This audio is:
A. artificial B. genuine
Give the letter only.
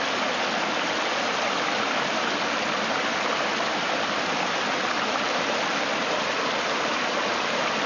B